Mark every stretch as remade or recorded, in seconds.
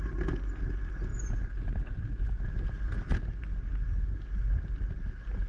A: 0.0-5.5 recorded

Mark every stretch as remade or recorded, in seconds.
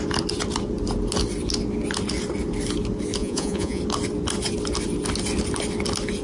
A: 0.0-3.2 recorded; 3.2-3.8 remade; 3.8-6.2 recorded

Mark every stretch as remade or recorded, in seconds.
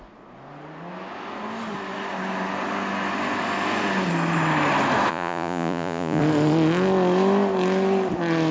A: 0.0-5.1 recorded; 5.1-6.2 remade; 6.2-8.5 recorded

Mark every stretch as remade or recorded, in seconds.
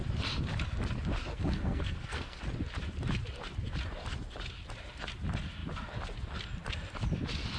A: 0.0-1.3 recorded; 1.3-2.4 remade; 2.4-7.6 recorded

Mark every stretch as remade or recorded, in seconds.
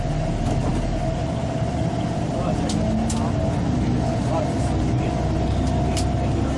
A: 0.0-6.6 recorded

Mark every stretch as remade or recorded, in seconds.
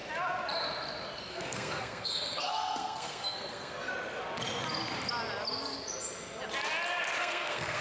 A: 0.0-1.3 recorded; 1.3-3.9 remade; 3.9-7.2 recorded; 7.2-7.8 remade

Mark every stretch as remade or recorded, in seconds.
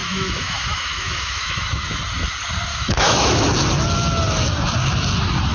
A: 0.0-2.0 remade; 2.0-2.7 recorded; 2.7-3.5 remade; 3.5-5.5 recorded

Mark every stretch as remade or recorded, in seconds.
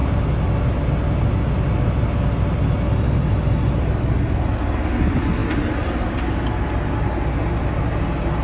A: 0.0-8.4 recorded